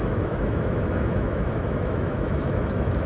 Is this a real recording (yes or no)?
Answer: no